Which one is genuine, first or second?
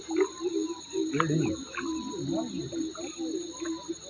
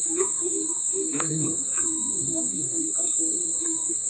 first